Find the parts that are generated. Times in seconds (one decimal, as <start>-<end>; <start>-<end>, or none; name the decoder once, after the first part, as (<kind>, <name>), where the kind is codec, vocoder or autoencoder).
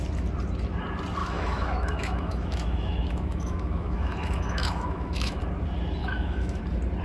1.2-5.4 (autoencoder, DAC-VAE); 6.0-6.6